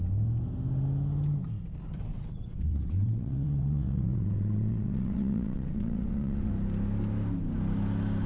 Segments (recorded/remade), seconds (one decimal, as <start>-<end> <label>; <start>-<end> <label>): 0.0-2.1 recorded; 2.1-6.5 remade; 6.5-8.3 recorded